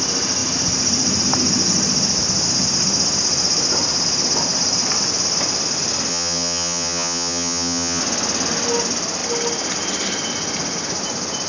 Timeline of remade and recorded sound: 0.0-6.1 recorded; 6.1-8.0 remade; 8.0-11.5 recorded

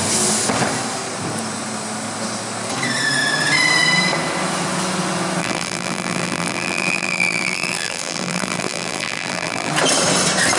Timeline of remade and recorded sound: 0.0-5.4 recorded; 5.4-9.7 remade; 9.7-10.6 recorded

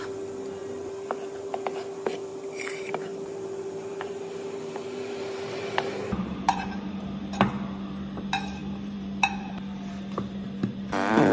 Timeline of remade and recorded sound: 0.0-0.6 recorded; 0.6-1.5 remade; 1.5-2.3 recorded; 2.3-7.3 remade; 7.3-8.6 recorded; 8.6-9.5 remade; 9.5-11.3 recorded

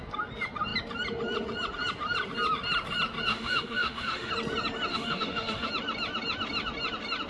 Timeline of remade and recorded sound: 0.0-3.3 recorded; 3.3-4.3 remade; 4.3-4.9 recorded; 4.9-5.7 remade; 5.7-7.3 recorded

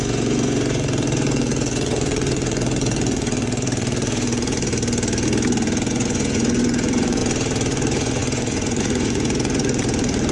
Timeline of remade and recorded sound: 0.0-4.7 remade; 4.7-5.9 recorded; 5.9-7.2 remade; 7.2-7.7 recorded; 7.7-10.3 remade

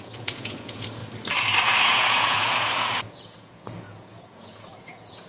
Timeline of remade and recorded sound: 0.0-1.0 remade; 1.0-1.6 recorded; 1.6-5.3 remade

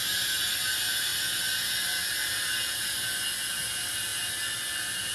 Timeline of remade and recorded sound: 0.0-5.1 recorded